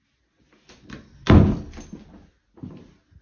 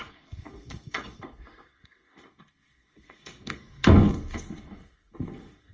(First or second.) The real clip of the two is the first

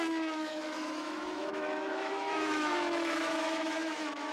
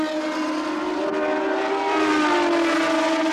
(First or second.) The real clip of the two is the second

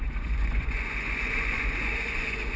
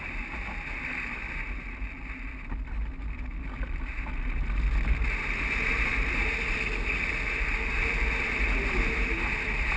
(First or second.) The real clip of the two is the second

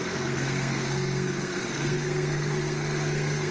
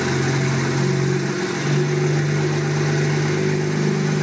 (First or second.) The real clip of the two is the second